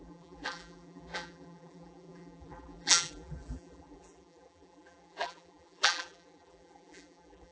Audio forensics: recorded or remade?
remade